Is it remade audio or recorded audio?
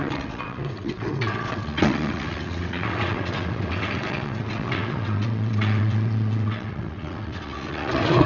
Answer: remade